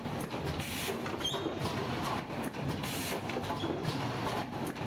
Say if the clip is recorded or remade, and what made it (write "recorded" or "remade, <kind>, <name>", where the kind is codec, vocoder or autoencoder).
remade, vocoder, BigVGAN v2